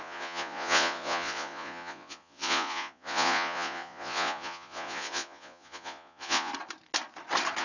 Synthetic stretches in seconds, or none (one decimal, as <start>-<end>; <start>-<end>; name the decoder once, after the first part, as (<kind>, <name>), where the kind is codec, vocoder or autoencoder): 0.0-6.5 (vocoder, Vocos)